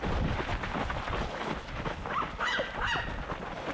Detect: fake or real real